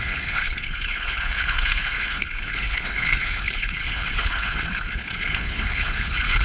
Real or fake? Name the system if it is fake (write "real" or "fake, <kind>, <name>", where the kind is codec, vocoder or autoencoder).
fake, codec, HILCodec